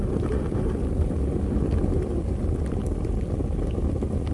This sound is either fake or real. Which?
real